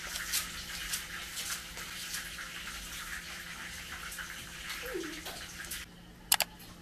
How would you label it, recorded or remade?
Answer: recorded